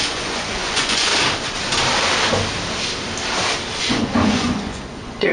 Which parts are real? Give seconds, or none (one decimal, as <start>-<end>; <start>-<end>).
1.1-3.8